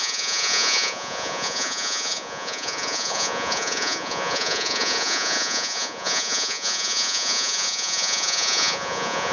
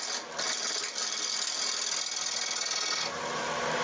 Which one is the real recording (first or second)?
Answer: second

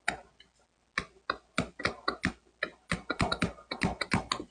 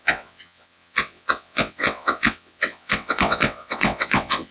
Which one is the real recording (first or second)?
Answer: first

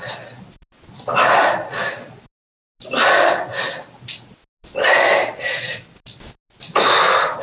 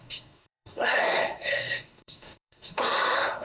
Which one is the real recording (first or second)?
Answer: first